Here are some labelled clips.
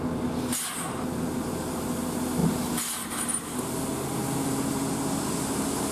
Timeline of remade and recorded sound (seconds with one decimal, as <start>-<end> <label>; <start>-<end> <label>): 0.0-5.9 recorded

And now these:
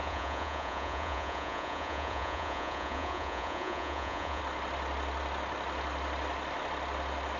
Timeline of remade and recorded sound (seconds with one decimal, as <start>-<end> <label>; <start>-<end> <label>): 0.0-4.4 remade; 4.4-7.4 recorded

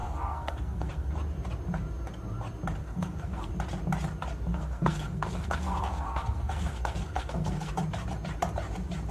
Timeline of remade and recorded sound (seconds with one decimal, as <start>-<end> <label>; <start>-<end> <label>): 0.0-1.1 remade; 1.1-2.8 recorded; 2.8-3.5 remade; 3.5-4.5 recorded; 4.5-7.7 remade; 7.7-9.1 recorded

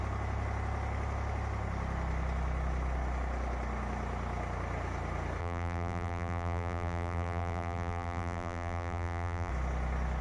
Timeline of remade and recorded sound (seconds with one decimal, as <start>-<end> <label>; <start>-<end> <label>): 0.0-5.4 recorded; 5.4-9.5 remade; 9.5-10.2 recorded

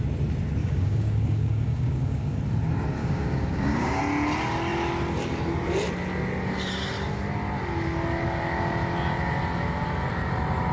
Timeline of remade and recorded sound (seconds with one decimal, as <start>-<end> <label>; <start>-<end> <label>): 0.0-0.6 recorded; 0.6-2.4 remade; 2.4-3.0 recorded; 3.0-4.0 remade; 4.0-10.7 recorded